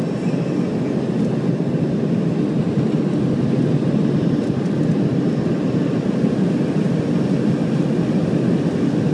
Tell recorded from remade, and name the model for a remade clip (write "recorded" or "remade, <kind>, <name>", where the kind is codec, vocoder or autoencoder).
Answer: recorded